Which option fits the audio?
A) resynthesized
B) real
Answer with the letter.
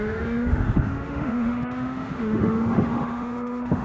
A